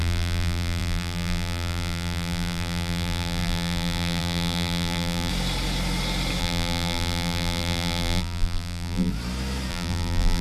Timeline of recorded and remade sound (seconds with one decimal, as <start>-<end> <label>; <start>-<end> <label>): 0.0-5.3 remade; 5.3-6.4 recorded; 6.4-9.1 remade; 9.1-9.7 recorded; 9.7-10.4 remade